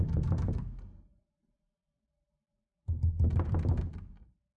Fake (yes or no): no